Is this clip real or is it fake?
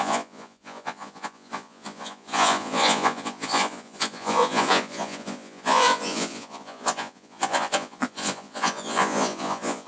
fake